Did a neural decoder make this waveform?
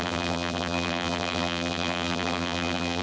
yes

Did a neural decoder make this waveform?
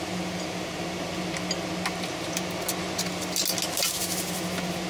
no